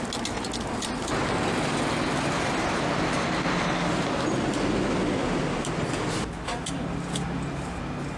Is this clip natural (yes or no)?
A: yes